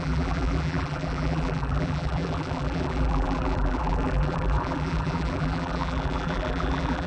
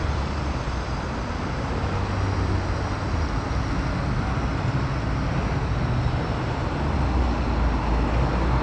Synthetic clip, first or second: first